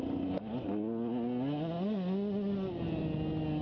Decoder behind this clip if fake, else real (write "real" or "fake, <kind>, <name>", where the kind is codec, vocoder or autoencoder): real